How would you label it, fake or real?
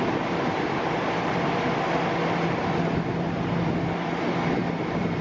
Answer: real